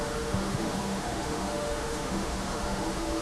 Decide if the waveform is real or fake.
fake